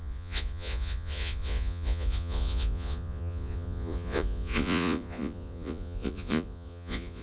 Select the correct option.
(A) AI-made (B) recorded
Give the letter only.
A